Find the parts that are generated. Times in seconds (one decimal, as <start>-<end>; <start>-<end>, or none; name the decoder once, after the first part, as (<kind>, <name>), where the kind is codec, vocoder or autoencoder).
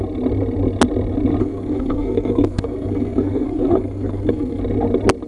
1.4-4.6 (codec, SNAC)